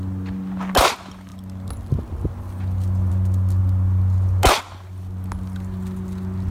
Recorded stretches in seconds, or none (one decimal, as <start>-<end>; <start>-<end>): 0.0-6.5